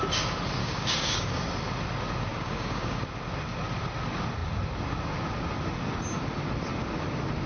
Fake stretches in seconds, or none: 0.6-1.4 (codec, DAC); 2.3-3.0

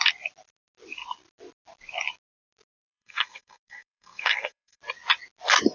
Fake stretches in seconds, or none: 2.7-4.8 (codec, SNAC)

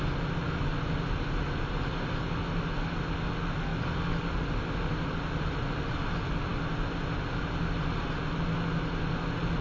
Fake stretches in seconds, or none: none

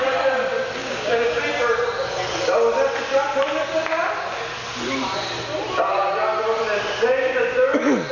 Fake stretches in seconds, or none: 0.8-1.4 (codec, DAC)